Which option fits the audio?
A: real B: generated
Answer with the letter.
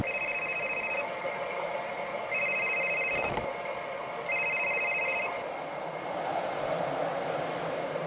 A